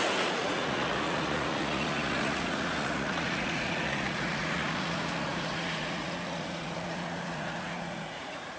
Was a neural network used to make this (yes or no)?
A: yes